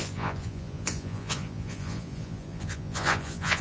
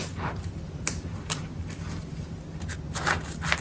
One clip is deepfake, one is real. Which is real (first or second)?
second